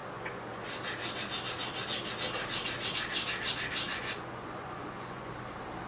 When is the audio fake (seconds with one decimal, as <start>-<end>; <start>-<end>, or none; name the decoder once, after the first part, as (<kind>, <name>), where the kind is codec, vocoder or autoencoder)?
0.0-0.7 (vocoder, Vocos); 3.9-5.3